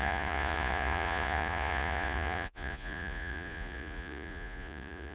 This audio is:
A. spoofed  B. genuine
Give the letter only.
A